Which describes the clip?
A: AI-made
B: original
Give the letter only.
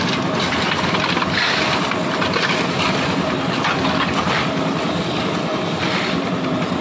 B